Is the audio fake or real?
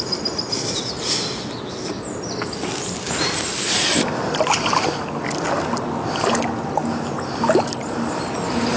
real